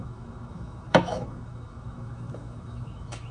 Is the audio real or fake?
fake